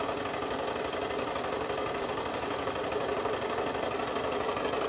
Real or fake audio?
real